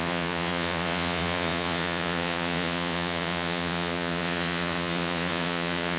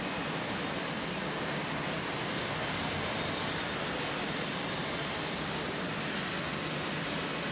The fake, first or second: first